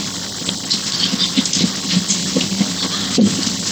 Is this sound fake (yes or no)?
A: no